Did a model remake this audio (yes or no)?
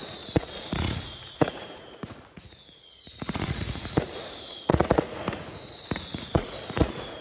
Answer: yes